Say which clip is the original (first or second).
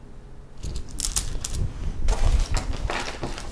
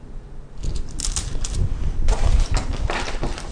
first